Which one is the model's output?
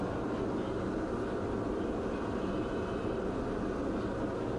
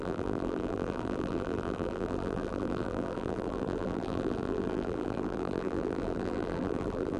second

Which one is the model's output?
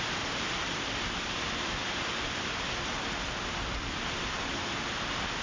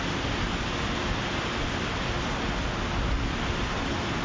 first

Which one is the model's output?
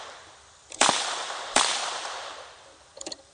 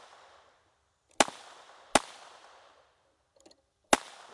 first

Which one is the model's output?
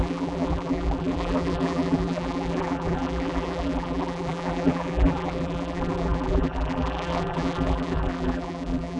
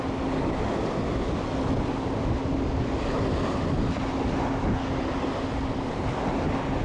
first